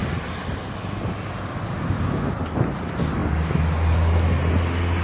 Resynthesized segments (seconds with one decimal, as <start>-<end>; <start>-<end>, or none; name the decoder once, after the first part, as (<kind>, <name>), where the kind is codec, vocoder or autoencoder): none